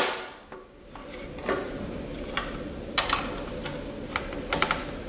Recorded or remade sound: recorded